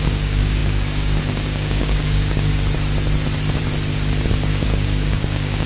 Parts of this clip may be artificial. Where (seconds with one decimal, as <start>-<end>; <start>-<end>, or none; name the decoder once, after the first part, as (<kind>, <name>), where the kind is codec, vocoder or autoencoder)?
0.0-2.5 (codec, DAC); 4.5-5.7